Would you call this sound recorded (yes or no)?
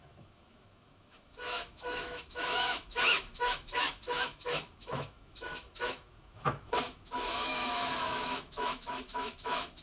no